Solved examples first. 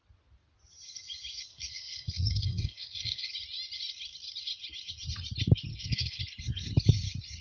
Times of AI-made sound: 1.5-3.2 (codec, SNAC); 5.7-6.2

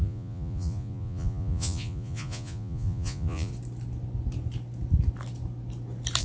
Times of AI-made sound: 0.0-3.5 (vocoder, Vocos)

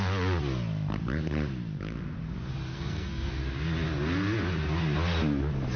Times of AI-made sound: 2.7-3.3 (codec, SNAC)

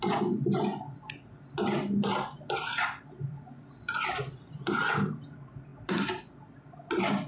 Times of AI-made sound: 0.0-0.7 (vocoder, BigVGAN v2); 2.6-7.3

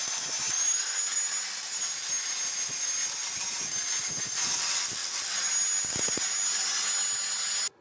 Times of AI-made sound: none

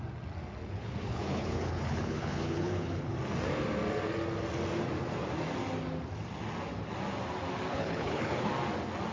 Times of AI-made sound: 0.6-3.0 (codec, HILCodec); 7.7-8.5

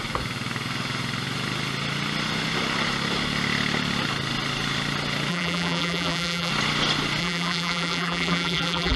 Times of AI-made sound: 5.3-6.5 (vocoder, BigVGAN v2); 7.2-9.0

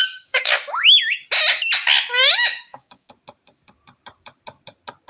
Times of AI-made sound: 0.0-1.2 (codec, DAC); 2.3-3.1